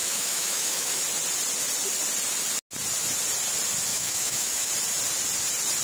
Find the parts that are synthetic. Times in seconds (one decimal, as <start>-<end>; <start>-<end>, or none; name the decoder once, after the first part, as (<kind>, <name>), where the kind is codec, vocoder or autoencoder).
0.0-1.0 (autoencoder, DAC-VAE); 3.9-4.7